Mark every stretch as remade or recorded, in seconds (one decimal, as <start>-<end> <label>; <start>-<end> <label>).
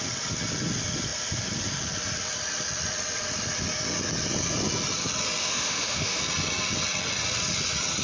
0.0-5.4 recorded; 5.4-6.2 remade; 6.2-8.0 recorded